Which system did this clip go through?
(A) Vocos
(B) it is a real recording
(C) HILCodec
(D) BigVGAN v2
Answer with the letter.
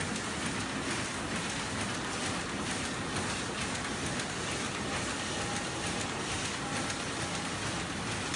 B